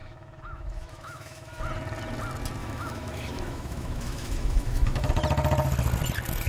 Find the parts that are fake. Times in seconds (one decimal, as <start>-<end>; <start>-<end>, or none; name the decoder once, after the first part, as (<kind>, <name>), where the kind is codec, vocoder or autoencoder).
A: 0.0-1.6 (autoencoder, DAC-VAE); 2.6-5.1